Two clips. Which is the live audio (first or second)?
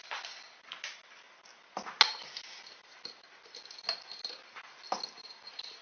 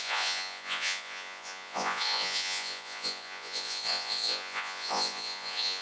first